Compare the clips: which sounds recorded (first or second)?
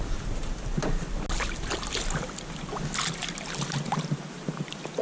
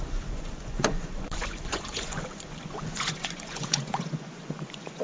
first